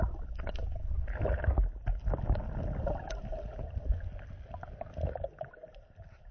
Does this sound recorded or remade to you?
recorded